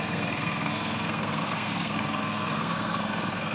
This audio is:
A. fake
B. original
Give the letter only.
A